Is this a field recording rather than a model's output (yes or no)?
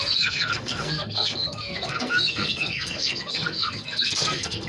no